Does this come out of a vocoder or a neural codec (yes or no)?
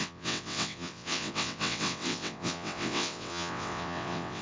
yes